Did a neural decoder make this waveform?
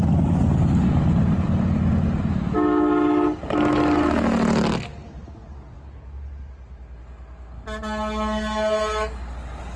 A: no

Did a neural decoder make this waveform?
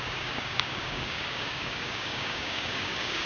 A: yes